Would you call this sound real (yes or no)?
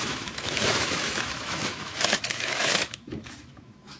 no